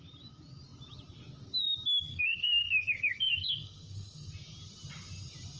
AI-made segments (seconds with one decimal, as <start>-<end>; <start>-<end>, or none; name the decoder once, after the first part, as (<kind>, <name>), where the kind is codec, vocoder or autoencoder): 2.1-4.3 (codec, SNAC)